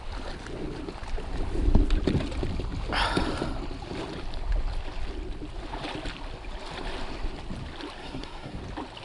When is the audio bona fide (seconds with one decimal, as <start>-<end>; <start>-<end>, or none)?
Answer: 0.0-8.0; 8.6-9.0